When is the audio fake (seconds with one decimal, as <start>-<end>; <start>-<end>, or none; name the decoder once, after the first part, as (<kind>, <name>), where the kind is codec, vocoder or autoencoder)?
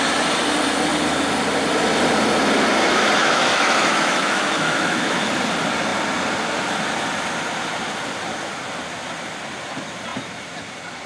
3.2-5.3 (autoencoder, DAC-VAE)